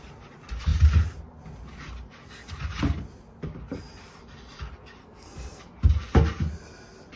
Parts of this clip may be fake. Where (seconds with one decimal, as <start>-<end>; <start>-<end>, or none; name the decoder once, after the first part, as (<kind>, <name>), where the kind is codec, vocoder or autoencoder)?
5.0-5.6 (codec, SNAC)